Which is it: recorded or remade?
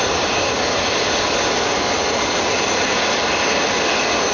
recorded